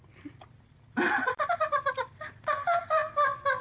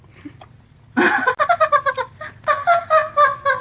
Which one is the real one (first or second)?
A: second